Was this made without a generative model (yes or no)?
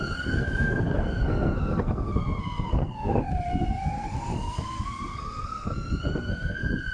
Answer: no